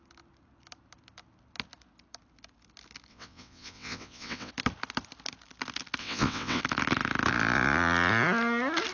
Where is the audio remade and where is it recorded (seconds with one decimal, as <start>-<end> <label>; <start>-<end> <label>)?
0.0-3.1 recorded; 3.1-4.5 remade; 4.5-6.0 recorded; 6.0-6.6 remade; 6.6-8.9 recorded